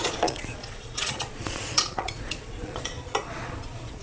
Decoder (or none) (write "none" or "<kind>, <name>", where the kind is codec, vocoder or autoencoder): vocoder, Vocos